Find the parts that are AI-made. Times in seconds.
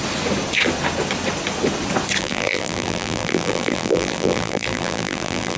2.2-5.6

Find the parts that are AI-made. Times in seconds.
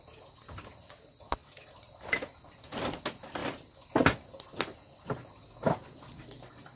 1.4-1.9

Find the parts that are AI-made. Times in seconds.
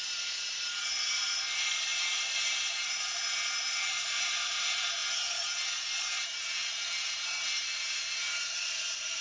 0.0-9.2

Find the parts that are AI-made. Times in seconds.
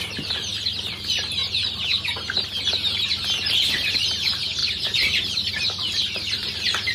0.0-1.4; 4.0-6.9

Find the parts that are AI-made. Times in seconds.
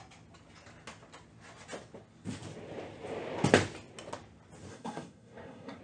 4.7-5.8